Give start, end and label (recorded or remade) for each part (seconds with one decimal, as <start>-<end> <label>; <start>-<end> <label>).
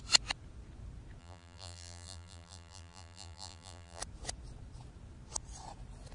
0.0-1.2 recorded; 1.2-4.0 remade; 4.0-6.1 recorded